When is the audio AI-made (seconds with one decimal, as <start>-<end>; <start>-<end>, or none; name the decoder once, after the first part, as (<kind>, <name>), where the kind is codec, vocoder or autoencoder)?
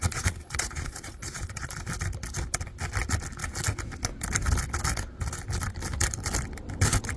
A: 0.0-1.7 (vocoder, Vocos)